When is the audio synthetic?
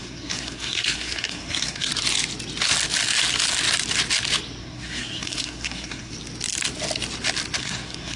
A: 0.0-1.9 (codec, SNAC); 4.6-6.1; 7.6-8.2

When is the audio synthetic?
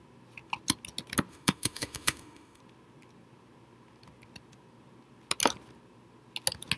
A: 1.3-2.6 (autoencoder, DAC-VAE)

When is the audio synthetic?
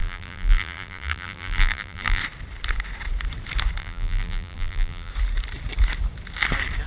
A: 0.0-2.2 (vocoder, BigVGAN v2); 3.8-5.1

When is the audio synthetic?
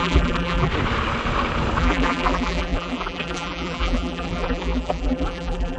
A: 0.0-0.7 (vocoder, BigVGAN v2); 1.8-5.8